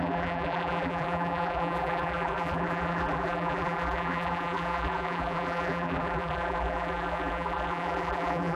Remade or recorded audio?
remade